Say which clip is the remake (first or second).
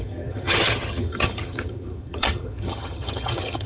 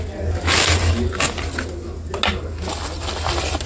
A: first